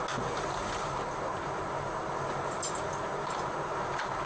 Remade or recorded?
recorded